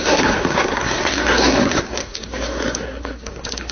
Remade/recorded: remade